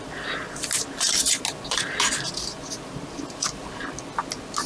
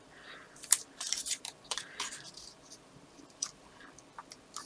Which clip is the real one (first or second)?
first